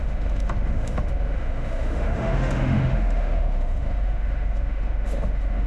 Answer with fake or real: fake